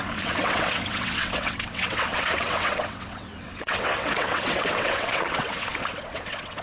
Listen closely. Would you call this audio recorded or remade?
remade